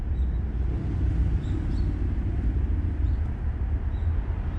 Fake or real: real